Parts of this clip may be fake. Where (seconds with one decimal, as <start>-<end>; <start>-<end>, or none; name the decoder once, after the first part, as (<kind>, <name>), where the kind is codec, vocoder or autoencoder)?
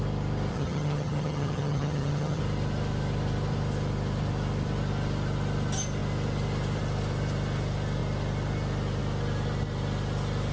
0.5-2.4 (vocoder, HiFi-GAN)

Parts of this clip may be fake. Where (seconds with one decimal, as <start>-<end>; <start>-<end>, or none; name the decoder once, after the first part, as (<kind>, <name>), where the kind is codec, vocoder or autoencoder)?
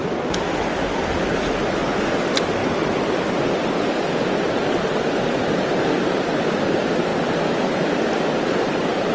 none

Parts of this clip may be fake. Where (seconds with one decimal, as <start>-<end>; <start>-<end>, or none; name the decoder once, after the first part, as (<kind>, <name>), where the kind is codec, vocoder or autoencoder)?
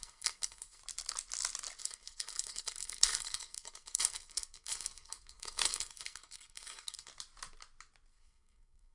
0.0-0.8 (codec, SNAC); 1.8-7.1; 8.1-8.9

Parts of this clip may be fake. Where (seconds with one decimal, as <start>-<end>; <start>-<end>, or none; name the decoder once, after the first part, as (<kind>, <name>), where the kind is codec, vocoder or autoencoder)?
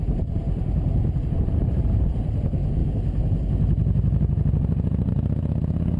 0.0-2.8 (vocoder, BigVGAN v2); 5.1-6.0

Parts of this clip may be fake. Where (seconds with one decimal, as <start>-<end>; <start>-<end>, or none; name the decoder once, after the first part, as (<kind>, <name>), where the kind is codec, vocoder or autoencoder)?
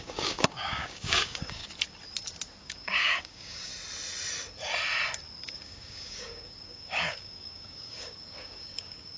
0.0-1.6 (codec, DAC); 2.6-3.7; 5.4-9.2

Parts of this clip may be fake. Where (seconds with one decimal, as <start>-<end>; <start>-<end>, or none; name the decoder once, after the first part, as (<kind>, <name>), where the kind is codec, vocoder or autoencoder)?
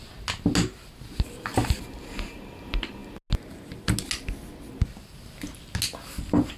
none